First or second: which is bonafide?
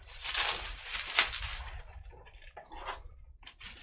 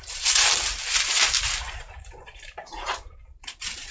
first